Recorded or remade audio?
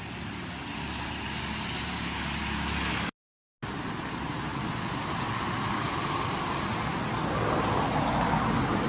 recorded